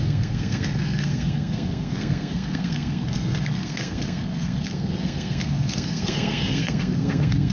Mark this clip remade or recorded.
remade